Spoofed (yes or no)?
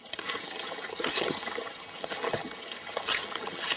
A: yes